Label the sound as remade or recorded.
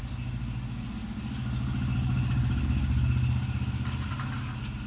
recorded